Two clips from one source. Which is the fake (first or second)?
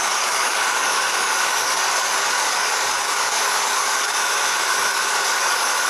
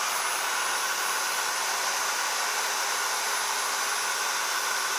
first